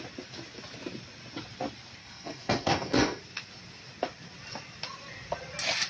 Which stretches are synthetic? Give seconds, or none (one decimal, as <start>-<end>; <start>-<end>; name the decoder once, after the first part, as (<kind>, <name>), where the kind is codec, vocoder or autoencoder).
2.0-3.2 (codec, SNAC)